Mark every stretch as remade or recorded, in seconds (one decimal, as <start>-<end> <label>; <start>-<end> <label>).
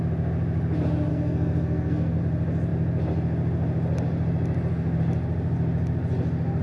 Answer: 0.0-1.1 recorded; 1.1-2.2 remade; 2.2-6.6 recorded